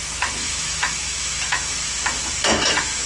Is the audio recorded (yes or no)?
no